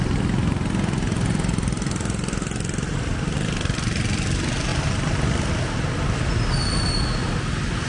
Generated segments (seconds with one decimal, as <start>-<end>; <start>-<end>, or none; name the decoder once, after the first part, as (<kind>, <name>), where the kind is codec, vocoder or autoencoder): none